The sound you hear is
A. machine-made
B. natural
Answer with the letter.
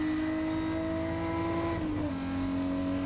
B